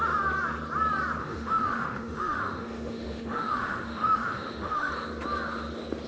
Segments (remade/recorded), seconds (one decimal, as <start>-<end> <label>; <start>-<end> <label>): 0.0-1.2 recorded; 1.2-4.9 remade; 4.9-6.1 recorded